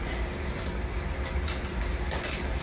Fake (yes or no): no